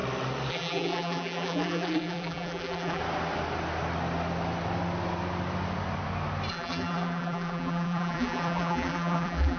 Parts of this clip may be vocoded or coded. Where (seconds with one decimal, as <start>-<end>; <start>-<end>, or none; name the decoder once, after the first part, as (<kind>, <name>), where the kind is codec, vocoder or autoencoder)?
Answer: 0.5-3.0 (vocoder, BigVGAN v2); 6.5-9.6